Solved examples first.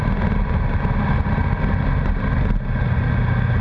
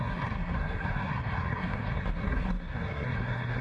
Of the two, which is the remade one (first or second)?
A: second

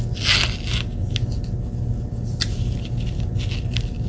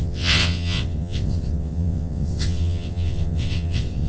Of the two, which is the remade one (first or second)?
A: second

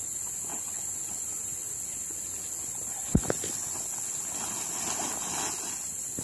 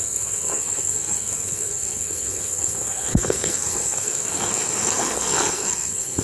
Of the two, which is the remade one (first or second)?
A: second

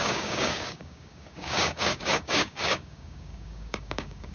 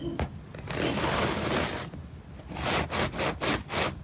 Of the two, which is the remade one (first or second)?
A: first